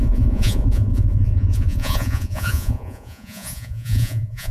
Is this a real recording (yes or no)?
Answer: no